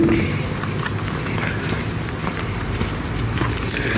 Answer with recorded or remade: recorded